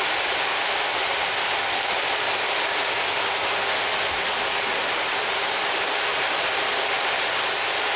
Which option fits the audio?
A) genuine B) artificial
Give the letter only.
A